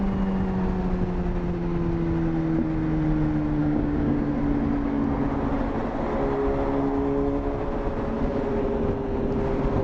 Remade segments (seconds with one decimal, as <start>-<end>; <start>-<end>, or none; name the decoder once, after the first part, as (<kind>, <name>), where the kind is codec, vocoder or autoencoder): 3.6-4.3 (codec, DAC)

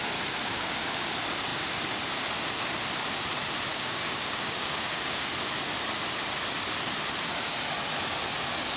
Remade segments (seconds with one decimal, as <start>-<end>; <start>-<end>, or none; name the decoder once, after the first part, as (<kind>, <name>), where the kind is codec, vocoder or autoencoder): 0.4-1.1 (codec, DAC); 3.7-5.3

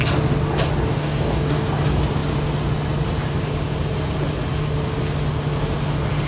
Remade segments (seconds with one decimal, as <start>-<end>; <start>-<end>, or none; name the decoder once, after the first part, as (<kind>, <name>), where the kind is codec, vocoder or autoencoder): 0.9-1.6 (codec, DAC)

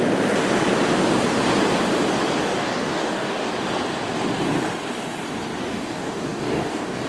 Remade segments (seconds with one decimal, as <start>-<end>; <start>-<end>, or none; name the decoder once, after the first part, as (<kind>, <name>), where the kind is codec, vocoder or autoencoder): 2.4-3.5 (codec, DAC); 5.6-7.1

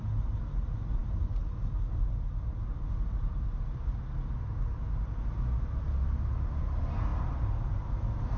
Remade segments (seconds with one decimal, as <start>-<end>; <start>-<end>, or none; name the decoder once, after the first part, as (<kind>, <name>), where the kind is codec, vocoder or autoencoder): none

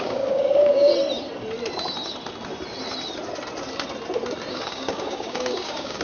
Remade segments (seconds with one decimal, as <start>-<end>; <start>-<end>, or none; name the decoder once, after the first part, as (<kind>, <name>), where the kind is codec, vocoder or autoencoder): 0.0-0.9 (codec, DAC); 4.5-6.0

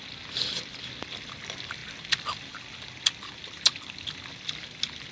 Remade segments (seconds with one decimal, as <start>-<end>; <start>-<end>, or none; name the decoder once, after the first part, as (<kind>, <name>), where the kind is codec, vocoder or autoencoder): none